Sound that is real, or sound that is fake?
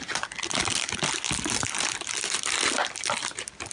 real